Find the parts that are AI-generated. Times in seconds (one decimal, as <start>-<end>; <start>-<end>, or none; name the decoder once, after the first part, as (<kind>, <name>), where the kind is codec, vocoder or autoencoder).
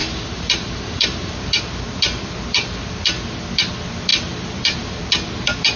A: 0.0-1.6 (vocoder, BigVGAN v2)